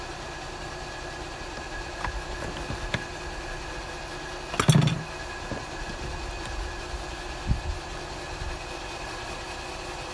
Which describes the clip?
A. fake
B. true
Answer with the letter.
B